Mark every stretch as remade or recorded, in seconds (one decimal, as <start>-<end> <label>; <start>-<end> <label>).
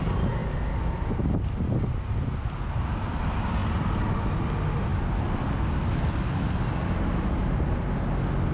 0.0-8.5 recorded